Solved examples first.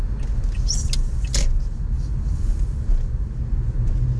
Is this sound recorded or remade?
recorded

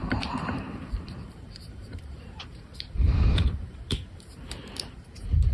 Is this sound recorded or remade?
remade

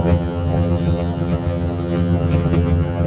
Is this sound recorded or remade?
remade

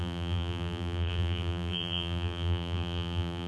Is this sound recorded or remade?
remade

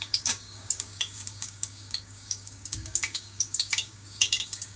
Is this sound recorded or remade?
remade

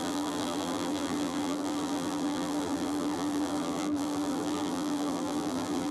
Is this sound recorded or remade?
remade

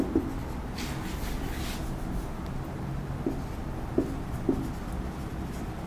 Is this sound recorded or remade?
recorded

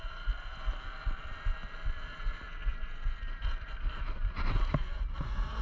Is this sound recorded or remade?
recorded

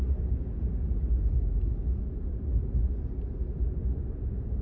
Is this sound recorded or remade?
recorded